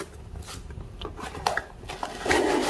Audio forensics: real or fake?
real